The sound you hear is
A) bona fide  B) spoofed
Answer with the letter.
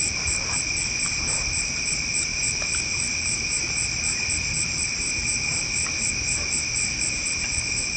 B